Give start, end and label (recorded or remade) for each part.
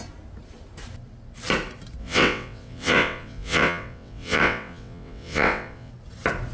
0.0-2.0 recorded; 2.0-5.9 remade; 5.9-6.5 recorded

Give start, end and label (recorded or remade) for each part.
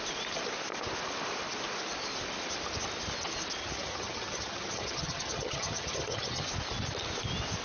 0.0-3.6 recorded; 3.6-6.5 remade; 6.5-7.6 recorded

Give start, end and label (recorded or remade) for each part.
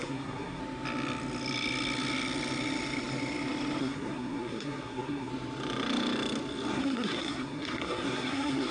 0.0-0.6 remade; 0.6-3.8 recorded; 3.8-5.3 remade; 5.3-6.7 recorded; 6.7-8.7 remade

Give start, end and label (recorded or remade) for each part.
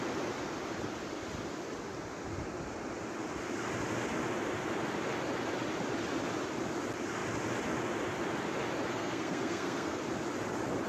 0.0-8.9 recorded; 8.9-10.0 remade; 10.0-10.9 recorded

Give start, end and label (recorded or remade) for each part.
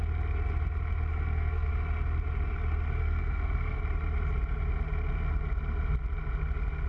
0.0-1.1 recorded; 1.1-1.7 remade; 1.7-3.0 recorded; 3.0-3.8 remade; 3.8-6.9 recorded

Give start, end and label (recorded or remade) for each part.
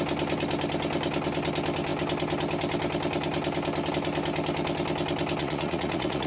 0.0-5.4 recorded; 5.4-6.3 remade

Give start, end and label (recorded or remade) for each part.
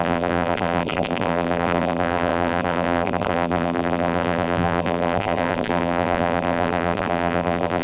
0.0-7.8 remade